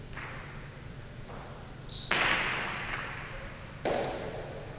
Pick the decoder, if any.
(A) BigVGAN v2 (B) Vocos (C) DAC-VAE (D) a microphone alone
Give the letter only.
D